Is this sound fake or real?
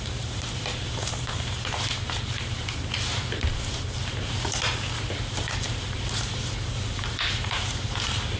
fake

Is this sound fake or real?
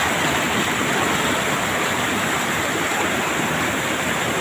real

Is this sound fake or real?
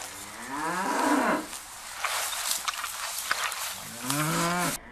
real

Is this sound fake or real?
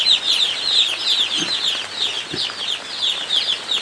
real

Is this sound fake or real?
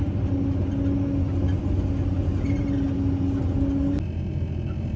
real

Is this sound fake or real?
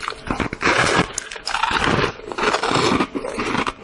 real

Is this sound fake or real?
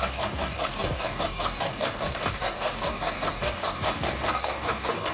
fake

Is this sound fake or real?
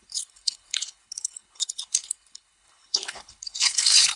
fake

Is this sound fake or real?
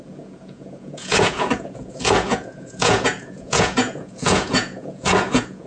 fake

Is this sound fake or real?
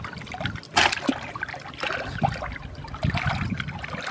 real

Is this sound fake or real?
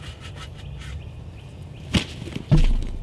real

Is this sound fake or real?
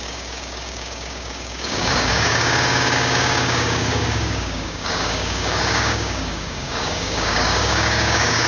fake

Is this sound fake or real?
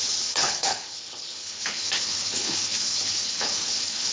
fake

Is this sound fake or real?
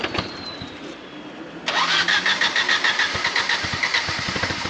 fake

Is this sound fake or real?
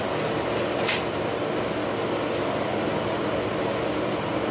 real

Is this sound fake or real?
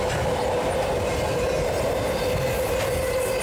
real